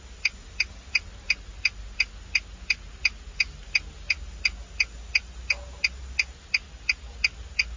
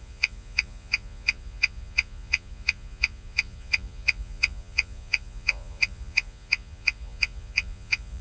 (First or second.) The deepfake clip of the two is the second